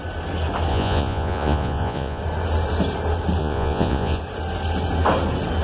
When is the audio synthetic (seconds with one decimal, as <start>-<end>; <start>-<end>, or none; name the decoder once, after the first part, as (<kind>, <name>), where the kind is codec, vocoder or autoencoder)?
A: 0.7-2.2 (vocoder, Vocos); 3.4-4.2